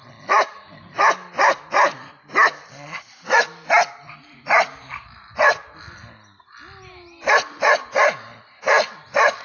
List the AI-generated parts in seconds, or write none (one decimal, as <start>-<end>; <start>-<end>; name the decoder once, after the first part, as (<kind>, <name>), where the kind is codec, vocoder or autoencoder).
none